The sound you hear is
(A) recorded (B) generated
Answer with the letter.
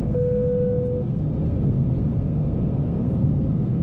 B